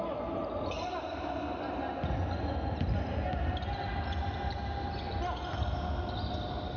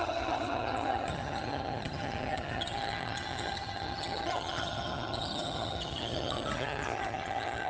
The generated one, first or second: second